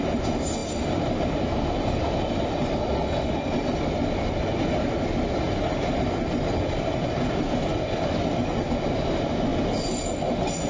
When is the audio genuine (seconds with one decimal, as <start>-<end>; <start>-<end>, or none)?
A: 0.0-10.7